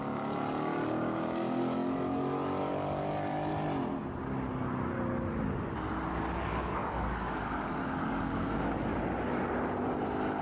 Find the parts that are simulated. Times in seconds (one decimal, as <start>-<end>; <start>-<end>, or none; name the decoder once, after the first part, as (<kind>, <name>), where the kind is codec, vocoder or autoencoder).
0.0-3.5 (codec, DAC); 6.3-8.9